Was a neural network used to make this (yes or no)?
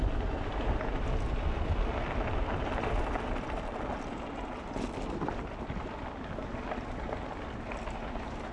no